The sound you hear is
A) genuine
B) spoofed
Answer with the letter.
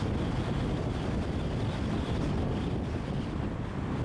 A